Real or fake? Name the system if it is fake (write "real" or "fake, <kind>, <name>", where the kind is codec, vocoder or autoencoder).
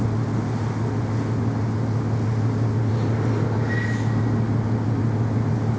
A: real